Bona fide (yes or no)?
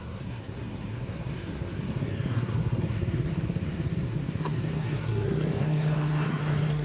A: no